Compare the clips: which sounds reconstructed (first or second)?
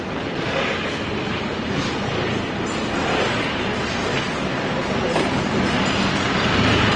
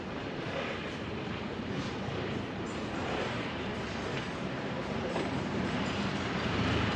second